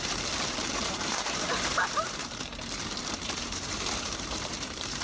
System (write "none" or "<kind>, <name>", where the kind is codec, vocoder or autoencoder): vocoder, BigVGAN v2